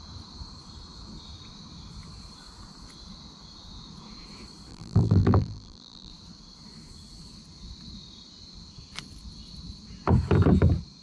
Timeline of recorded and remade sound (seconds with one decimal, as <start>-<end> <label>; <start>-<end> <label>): 0.0-4.7 recorded; 4.7-6.1 remade; 6.1-11.0 recorded